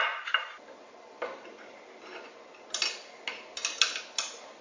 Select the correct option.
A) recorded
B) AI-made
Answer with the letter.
A